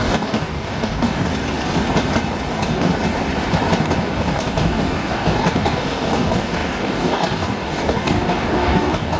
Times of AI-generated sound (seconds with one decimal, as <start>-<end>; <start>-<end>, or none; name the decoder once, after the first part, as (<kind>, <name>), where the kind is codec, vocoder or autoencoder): 0.0-1.3 (codec, DAC); 2.5-2.9; 3.8-9.2